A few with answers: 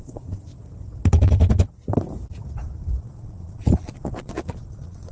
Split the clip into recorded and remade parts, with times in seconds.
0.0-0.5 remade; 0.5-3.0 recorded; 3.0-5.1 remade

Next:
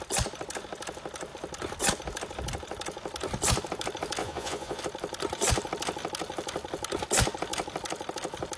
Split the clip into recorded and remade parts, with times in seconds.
0.0-4.2 recorded; 4.2-4.8 remade; 4.8-8.6 recorded

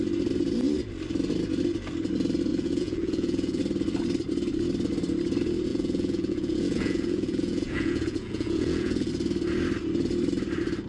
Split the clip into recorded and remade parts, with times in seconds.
0.0-2.5 recorded; 2.5-3.6 remade; 3.6-5.7 recorded; 5.7-9.1 remade; 9.1-10.9 recorded